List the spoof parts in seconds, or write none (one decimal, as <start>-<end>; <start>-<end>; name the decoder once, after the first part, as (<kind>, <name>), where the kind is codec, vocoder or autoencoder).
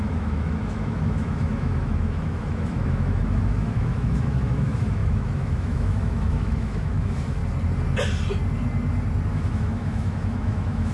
0.0-7.4 (autoencoder, DAC-VAE); 9.3-10.9